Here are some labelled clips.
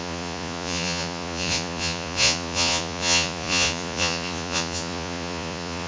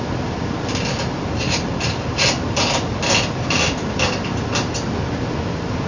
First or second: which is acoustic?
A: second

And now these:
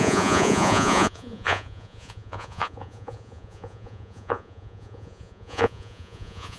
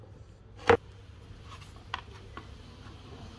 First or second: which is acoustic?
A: second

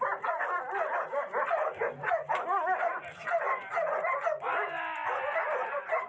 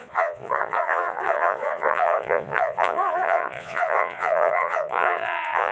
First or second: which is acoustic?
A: first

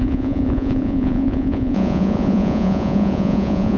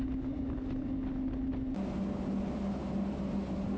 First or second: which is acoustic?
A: second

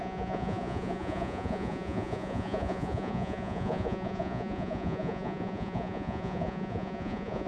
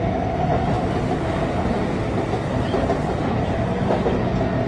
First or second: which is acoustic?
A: second